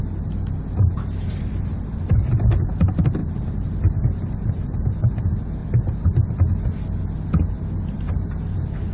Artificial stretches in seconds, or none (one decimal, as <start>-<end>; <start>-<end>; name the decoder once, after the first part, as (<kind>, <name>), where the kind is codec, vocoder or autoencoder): 0.9-5.6 (vocoder, BigVGAN v2); 7.8-8.9